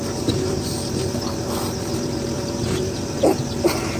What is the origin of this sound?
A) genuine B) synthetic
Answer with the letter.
B